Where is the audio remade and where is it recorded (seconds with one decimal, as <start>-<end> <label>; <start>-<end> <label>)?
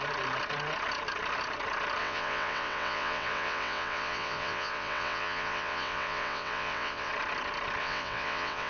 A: 0.0-2.0 recorded; 2.0-7.1 remade; 7.1-7.8 recorded; 7.8-8.7 remade